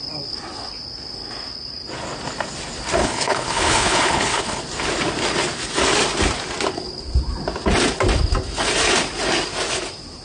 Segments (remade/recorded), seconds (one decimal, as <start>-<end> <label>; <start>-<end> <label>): 0.0-3.0 recorded; 3.0-4.6 remade; 4.6-10.2 recorded